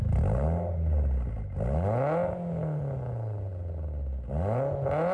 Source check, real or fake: real